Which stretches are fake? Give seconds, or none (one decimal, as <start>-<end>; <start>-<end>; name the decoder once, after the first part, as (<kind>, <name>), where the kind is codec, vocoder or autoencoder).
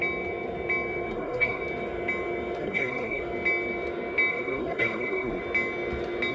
1.1-1.6 (codec, SNAC); 2.6-3.2; 4.3-5.4